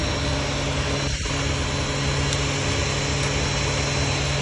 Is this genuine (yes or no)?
yes